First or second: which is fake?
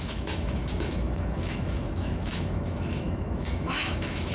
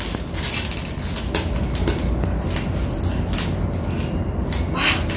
first